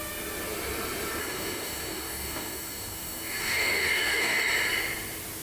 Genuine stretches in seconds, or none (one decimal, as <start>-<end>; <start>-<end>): 0.0-1.2; 4.4-5.4